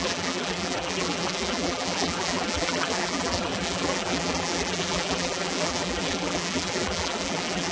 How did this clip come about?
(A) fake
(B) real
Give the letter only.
A